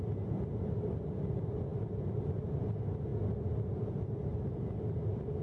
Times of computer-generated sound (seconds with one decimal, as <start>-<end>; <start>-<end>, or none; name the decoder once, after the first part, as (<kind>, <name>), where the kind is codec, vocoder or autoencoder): none